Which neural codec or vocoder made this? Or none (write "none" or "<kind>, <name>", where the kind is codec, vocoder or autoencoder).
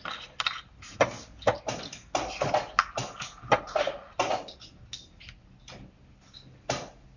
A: none